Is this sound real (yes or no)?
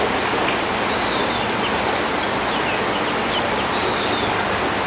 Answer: yes